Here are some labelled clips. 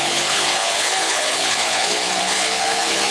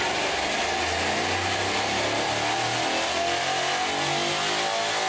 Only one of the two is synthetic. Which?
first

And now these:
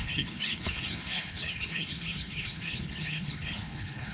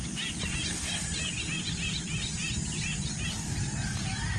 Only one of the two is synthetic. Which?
first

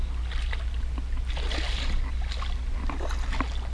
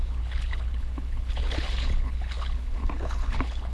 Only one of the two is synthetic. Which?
second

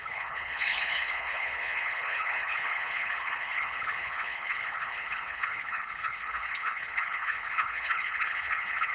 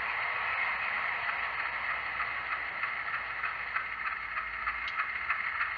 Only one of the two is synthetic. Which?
first